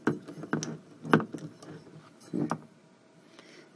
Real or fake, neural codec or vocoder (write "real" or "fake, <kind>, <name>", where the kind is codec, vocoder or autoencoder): real